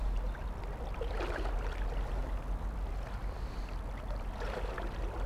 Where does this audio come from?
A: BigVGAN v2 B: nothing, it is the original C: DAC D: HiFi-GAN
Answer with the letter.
B